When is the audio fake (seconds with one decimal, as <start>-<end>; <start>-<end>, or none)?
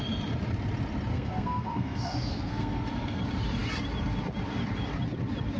1.1-3.2